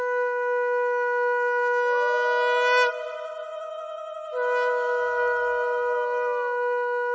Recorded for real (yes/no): yes